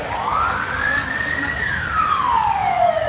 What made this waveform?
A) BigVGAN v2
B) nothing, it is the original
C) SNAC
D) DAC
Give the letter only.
D